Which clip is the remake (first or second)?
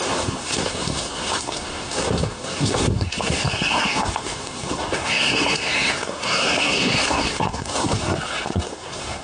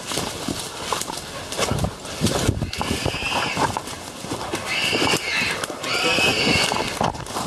first